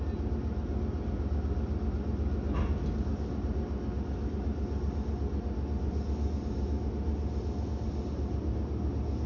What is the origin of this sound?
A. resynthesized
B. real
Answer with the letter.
B